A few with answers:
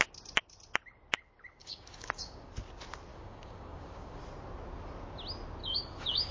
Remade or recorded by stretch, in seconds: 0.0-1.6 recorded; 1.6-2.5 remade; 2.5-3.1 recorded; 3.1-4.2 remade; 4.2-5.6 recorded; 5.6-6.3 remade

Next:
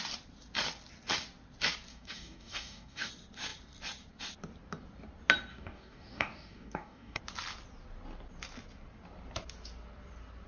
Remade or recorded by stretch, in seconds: 0.0-1.9 recorded; 1.9-3.1 remade; 3.1-5.5 recorded; 5.5-7.2 remade; 7.2-10.5 recorded

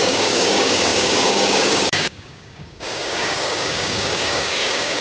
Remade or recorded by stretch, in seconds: 0.0-5.0 remade

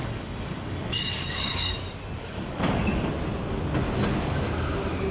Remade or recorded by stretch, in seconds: 0.0-3.1 remade; 3.1-5.1 recorded

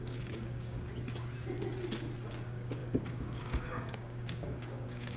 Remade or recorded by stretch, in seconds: 0.0-0.9 remade; 0.9-2.3 recorded; 2.3-5.2 remade